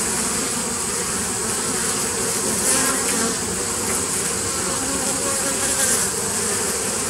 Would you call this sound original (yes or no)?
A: yes